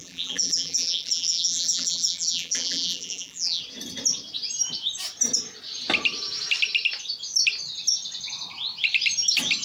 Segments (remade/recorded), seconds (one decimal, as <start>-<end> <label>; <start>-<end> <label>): 0.0-3.6 remade; 3.6-9.6 recorded